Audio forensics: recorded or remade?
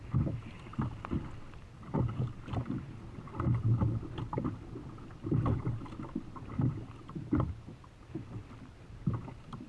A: recorded